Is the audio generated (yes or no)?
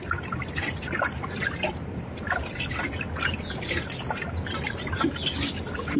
no